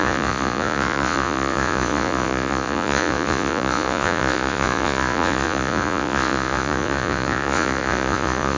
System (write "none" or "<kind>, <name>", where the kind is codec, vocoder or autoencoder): vocoder, Vocos